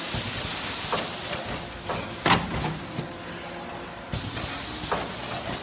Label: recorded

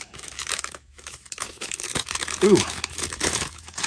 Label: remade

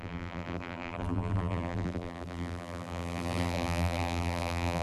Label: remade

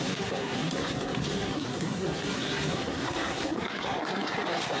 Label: remade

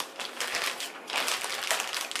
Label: recorded